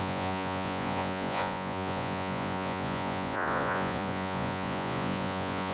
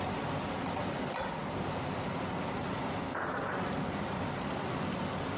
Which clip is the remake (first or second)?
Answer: first